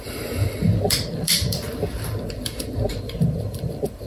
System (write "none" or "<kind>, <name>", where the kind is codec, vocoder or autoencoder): vocoder, BigVGAN v2